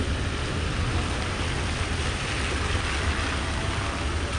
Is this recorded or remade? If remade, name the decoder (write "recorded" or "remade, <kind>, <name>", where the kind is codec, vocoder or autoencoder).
recorded